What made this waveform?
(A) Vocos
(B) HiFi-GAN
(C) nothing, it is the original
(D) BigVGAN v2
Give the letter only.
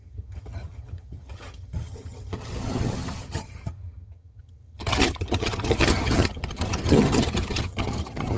B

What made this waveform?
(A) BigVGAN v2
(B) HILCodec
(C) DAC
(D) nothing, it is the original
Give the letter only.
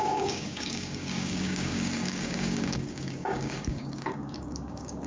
C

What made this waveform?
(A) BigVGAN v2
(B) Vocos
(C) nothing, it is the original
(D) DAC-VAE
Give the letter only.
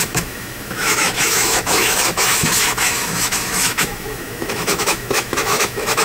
D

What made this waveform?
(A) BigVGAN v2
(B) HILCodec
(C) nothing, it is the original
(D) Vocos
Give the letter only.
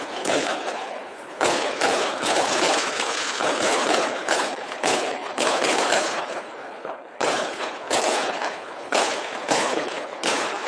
B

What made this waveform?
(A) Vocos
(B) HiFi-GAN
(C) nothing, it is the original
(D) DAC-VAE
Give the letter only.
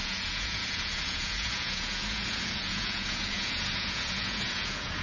A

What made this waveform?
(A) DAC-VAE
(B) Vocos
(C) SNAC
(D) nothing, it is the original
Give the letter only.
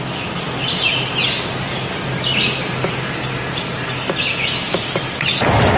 D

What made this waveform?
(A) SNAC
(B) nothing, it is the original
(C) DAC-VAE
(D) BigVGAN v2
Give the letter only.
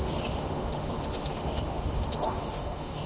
C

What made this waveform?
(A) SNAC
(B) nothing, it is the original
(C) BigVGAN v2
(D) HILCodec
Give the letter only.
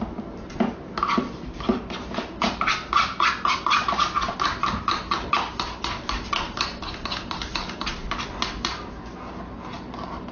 B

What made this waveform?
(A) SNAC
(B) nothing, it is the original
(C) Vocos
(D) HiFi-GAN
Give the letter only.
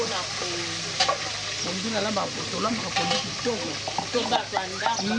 B